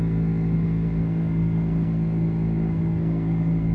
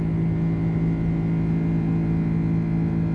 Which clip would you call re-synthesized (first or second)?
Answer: first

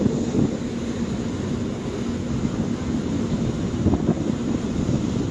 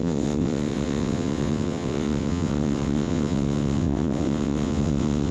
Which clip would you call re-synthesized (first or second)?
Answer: second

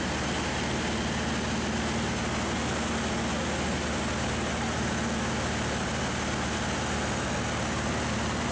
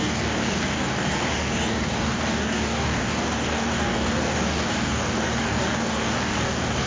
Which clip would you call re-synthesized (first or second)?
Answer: second